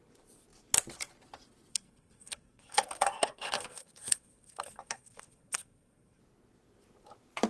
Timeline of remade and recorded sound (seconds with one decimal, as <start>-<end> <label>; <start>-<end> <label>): 0.0-1.7 recorded; 1.7-6.2 remade; 6.2-7.5 recorded